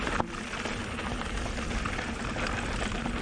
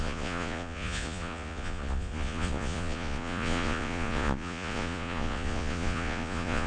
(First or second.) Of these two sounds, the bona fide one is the first